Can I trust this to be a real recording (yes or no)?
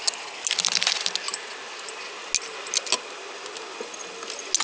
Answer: yes